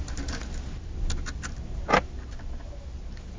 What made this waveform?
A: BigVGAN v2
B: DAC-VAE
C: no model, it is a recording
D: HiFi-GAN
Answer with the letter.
C